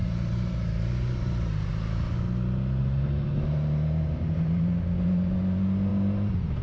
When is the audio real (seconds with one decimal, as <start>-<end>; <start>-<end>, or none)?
1.7-2.8; 4.6-6.6